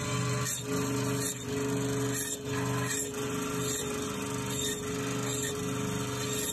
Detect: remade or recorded recorded